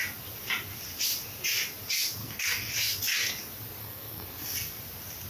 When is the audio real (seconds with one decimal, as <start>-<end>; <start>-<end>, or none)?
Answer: 0.0-2.2; 2.7-3.8; 4.8-5.3